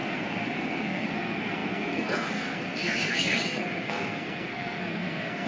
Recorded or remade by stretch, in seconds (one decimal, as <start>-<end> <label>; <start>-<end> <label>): 0.0-5.5 remade